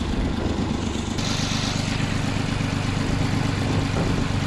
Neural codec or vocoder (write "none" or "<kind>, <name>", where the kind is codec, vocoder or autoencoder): none